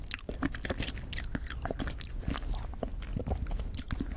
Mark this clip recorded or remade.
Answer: recorded